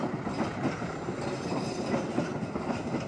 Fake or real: real